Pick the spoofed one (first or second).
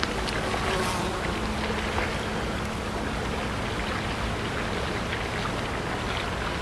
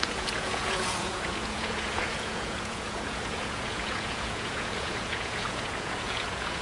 second